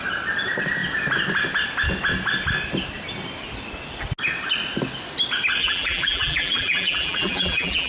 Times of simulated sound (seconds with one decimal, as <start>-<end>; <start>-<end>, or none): 5.6-7.9